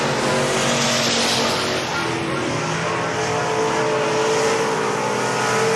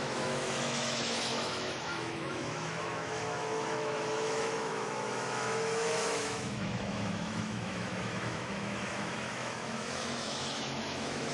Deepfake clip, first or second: second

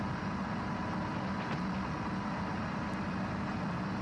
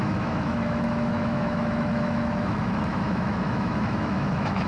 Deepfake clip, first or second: second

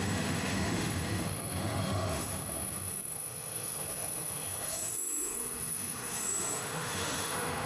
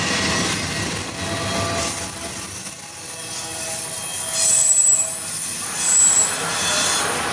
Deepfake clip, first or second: first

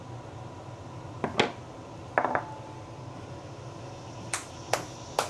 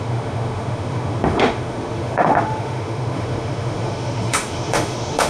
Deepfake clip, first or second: second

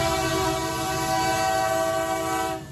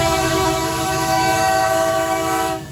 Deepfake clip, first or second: second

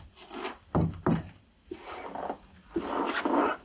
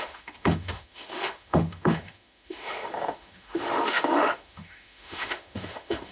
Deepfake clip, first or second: second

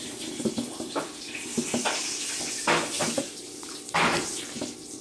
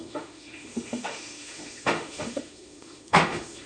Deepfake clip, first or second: second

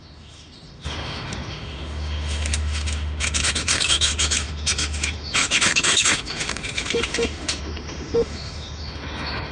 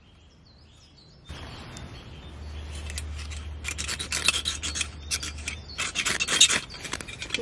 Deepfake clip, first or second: first